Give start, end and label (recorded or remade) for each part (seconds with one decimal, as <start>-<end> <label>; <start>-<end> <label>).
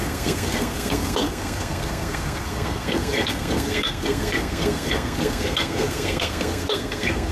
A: 0.0-7.3 remade